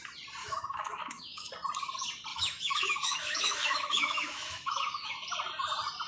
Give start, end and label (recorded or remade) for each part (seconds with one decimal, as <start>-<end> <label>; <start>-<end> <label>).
0.0-0.4 recorded; 0.4-1.5 remade; 1.5-2.3 recorded; 2.3-5.1 remade; 5.1-6.1 recorded